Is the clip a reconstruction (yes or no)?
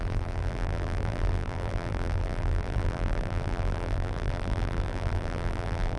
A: yes